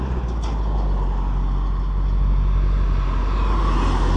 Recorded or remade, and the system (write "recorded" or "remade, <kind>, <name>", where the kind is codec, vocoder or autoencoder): recorded